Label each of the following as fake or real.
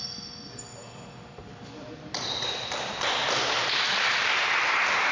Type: real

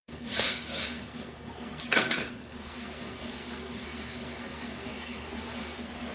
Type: fake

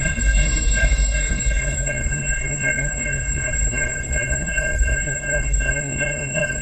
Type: fake